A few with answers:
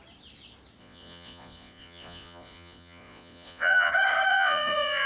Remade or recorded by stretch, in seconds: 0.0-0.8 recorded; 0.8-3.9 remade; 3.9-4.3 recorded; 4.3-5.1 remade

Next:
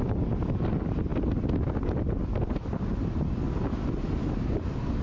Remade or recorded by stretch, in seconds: 0.0-5.0 recorded

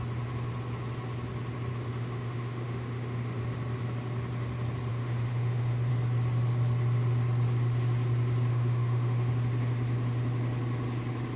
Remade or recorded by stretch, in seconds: 0.0-1.7 recorded; 1.7-3.4 remade; 3.4-4.9 recorded; 4.9-5.9 remade; 5.9-8.5 recorded; 8.5-9.3 remade; 9.3-11.4 recorded

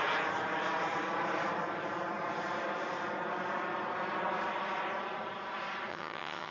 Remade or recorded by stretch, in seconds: 0.0-5.9 recorded; 5.9-6.5 remade

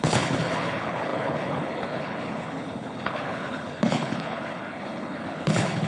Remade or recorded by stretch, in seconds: 0.0-5.9 remade

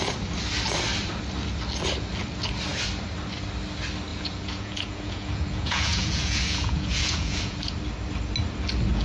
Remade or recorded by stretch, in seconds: 0.0-4.1 recorded; 4.1-7.7 remade; 7.7-9.0 recorded

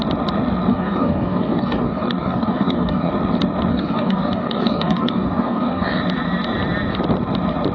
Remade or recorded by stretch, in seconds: 0.0-0.7 recorded; 0.7-3.1 remade; 3.1-3.7 recorded; 3.7-6.0 remade; 6.0-7.7 recorded